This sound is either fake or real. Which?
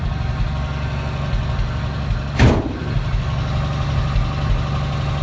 real